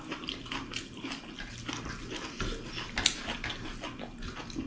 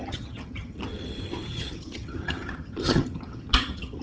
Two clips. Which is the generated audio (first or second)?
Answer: second